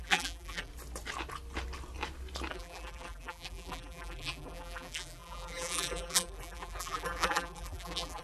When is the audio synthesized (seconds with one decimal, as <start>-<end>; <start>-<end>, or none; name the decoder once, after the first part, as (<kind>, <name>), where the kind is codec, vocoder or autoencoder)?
0.0-0.7 (vocoder, BigVGAN v2); 2.5-8.2